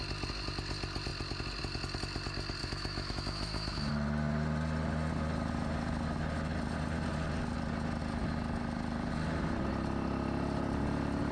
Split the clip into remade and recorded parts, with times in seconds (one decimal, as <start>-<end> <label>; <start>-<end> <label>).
0.0-2.6 recorded; 2.6-3.9 remade; 3.9-11.3 recorded